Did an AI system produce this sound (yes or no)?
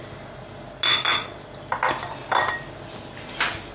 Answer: no